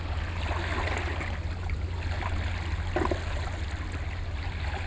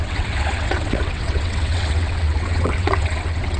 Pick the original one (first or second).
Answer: first